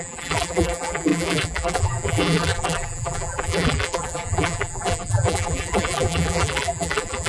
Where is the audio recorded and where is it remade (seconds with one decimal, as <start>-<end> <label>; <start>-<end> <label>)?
0.0-7.3 remade